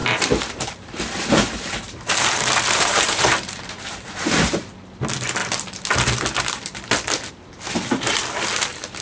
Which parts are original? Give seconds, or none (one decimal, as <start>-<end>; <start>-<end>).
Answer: 4.7-9.0